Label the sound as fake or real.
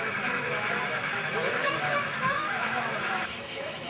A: fake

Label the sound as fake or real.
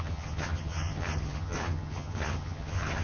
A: fake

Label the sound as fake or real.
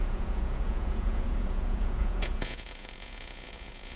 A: fake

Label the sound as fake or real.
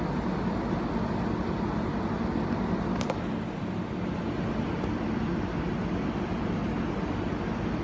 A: real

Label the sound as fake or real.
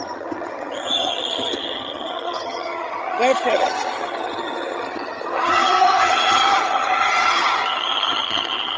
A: fake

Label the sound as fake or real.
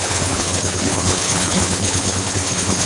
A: fake